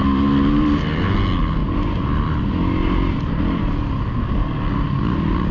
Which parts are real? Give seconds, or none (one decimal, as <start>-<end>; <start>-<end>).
0.0-5.5